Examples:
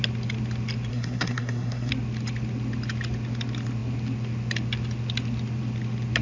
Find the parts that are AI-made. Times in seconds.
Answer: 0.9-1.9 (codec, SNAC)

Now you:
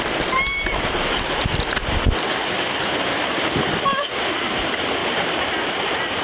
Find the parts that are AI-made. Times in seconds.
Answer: 5.0-5.5 (vocoder, BigVGAN v2)